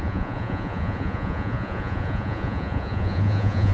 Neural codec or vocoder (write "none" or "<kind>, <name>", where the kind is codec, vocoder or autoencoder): vocoder, Vocos